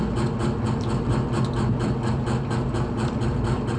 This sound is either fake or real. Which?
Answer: real